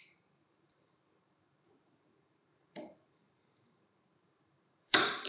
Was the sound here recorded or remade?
remade